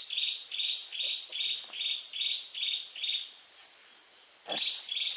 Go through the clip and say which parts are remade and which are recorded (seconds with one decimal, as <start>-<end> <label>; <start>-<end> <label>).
0.0-5.2 recorded